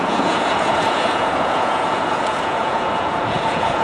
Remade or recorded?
remade